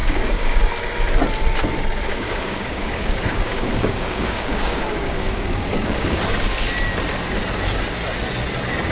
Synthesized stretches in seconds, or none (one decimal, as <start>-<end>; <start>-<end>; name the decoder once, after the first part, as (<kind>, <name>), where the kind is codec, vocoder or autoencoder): 0.0-0.6 (codec, DAC); 2.1-6.2